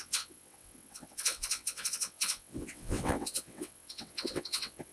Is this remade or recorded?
remade